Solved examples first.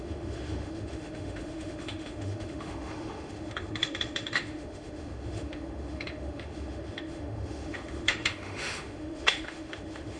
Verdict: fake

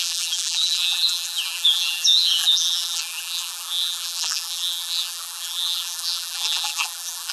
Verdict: fake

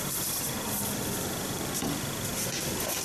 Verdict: real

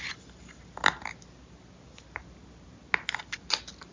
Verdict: real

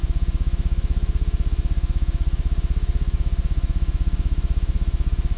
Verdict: fake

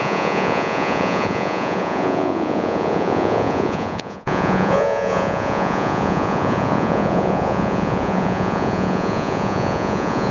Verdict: fake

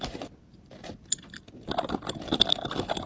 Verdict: real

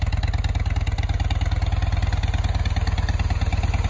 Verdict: real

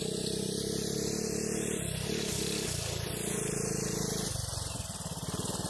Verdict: real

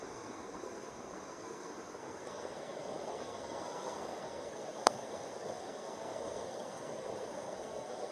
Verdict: fake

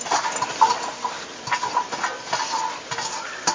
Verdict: real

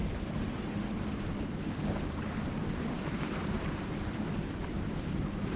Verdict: fake